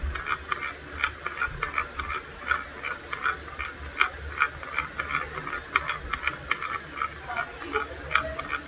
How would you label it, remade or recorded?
recorded